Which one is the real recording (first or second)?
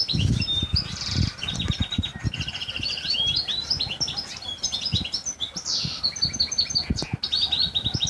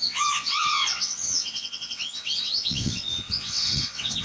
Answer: first